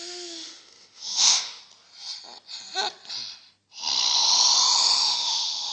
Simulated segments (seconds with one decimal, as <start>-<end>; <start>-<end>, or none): 0.0-1.6; 5.0-5.7